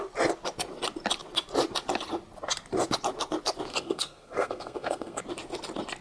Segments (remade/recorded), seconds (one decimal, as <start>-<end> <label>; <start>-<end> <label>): 0.0-3.7 recorded; 3.7-5.2 remade; 5.2-6.0 recorded